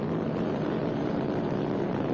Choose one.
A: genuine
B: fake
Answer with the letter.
A